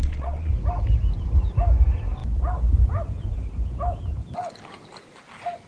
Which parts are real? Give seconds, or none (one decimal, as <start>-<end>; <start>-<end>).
0.5-5.7